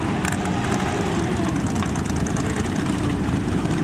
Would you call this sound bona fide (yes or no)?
no